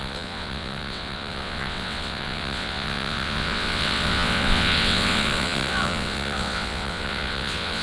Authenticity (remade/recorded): remade